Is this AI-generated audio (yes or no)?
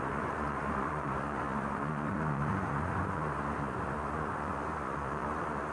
yes